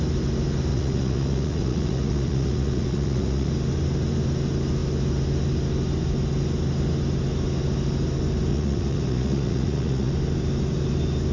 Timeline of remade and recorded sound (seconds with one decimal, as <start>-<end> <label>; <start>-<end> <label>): 0.0-0.7 recorded; 0.7-3.5 remade; 3.5-8.5 recorded; 8.5-10.1 remade; 10.1-11.3 recorded